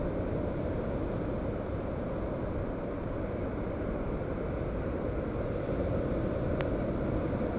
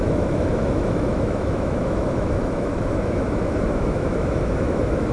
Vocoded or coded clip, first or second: second